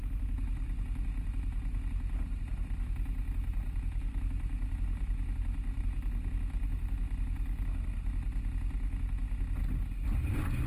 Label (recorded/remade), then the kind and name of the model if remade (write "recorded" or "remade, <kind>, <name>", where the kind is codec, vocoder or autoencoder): recorded